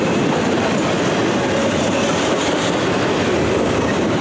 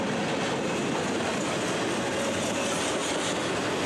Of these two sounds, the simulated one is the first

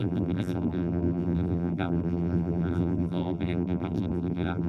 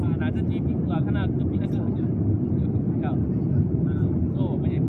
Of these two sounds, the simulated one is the first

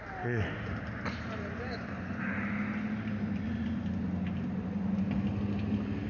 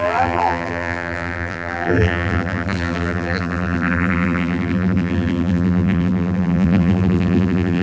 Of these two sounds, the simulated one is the second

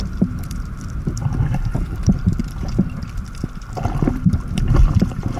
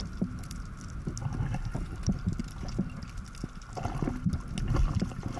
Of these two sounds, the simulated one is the first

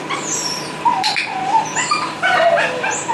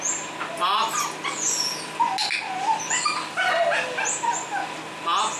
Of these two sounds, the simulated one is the first